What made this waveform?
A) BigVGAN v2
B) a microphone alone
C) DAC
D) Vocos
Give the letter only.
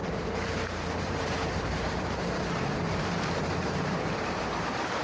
A